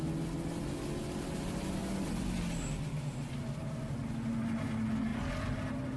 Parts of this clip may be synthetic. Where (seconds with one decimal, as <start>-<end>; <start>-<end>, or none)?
5.1-6.0